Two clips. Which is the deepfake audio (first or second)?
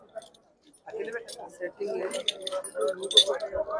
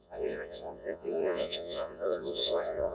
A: second